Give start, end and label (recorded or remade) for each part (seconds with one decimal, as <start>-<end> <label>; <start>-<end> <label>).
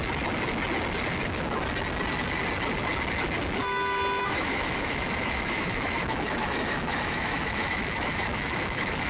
0.0-4.2 recorded; 4.2-9.1 remade